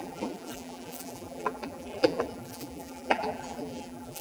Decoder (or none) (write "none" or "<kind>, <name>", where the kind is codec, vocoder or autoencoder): vocoder, BigVGAN v2